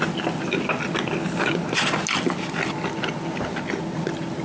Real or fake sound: real